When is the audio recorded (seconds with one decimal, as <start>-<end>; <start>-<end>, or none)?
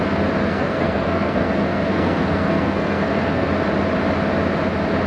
0.0-0.4; 3.5-5.1